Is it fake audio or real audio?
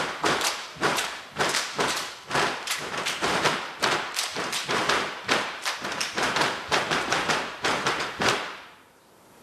fake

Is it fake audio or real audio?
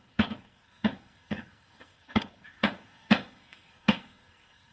fake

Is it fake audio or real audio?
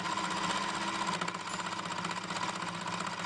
real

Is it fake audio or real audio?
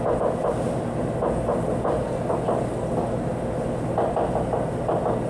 real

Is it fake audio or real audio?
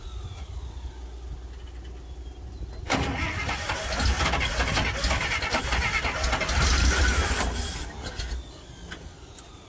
real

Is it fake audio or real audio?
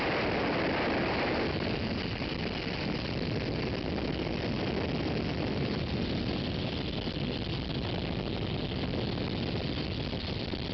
real